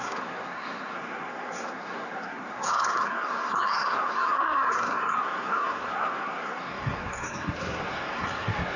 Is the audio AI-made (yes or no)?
yes